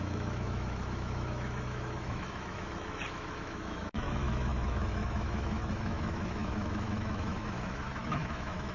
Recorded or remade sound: remade